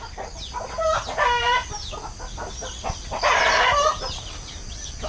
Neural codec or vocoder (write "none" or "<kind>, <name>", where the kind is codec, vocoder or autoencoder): none